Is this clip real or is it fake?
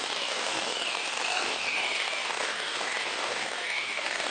fake